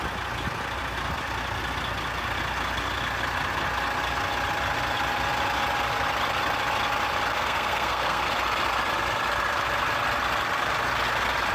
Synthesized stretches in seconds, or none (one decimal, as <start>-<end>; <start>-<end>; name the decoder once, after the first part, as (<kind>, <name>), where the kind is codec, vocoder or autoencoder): 7.3-8.2 (codec, SNAC)